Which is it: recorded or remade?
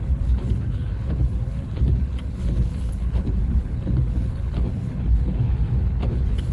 remade